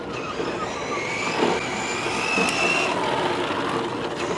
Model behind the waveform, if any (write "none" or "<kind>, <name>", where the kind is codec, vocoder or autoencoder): none